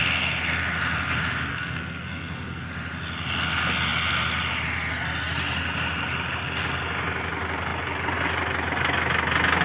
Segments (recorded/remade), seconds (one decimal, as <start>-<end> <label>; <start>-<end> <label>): 0.0-1.5 recorded; 1.5-2.7 remade; 2.7-9.6 recorded

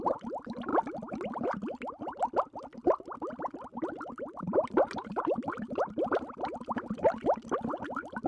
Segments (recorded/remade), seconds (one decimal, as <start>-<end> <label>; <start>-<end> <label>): 0.0-3.7 recorded; 3.7-7.1 remade; 7.1-8.3 recorded

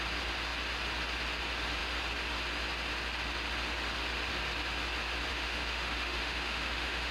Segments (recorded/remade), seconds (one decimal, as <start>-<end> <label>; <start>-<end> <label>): 0.0-5.3 recorded; 5.3-7.1 remade

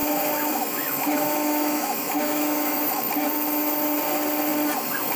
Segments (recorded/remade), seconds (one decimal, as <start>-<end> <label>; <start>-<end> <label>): 0.0-3.1 remade; 3.1-5.2 recorded

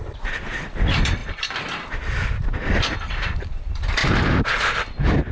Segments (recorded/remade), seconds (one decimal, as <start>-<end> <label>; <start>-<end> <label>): 0.0-4.0 remade; 4.0-5.3 recorded

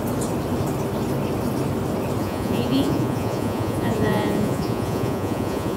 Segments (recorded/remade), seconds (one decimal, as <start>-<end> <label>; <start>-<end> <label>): 0.0-2.2 recorded; 2.2-5.8 remade

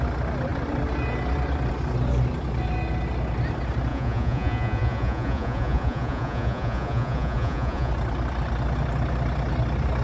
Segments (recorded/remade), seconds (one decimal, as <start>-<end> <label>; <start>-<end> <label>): 0.0-3.9 recorded; 3.9-7.9 remade; 7.9-10.0 recorded

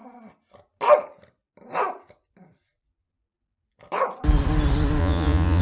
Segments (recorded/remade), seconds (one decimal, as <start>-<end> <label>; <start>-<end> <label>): 0.0-5.0 recorded; 5.0-5.6 remade